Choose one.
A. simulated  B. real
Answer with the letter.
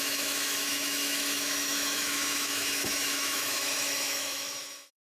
A